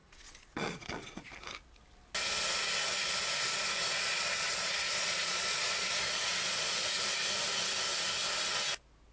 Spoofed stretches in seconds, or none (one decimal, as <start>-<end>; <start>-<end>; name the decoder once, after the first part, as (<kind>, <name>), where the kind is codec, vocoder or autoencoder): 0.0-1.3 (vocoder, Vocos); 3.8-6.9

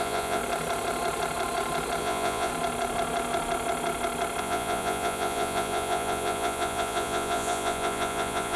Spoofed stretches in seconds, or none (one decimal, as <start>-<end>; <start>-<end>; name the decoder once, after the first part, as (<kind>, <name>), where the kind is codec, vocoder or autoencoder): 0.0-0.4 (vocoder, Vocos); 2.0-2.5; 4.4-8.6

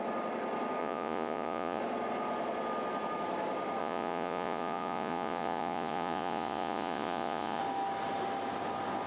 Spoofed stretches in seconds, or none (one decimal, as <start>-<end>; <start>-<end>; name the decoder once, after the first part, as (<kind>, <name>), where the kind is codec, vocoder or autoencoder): 0.8-1.8 (vocoder, Vocos); 3.8-7.6

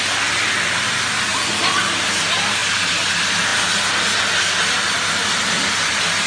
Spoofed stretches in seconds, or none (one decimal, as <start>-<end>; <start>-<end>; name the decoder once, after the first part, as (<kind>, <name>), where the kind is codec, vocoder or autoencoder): none